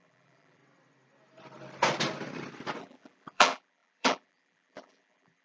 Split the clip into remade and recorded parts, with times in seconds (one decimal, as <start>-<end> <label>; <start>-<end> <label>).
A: 0.0-0.6 remade; 0.6-2.8 recorded; 2.8-5.4 remade